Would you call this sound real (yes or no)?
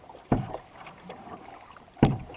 no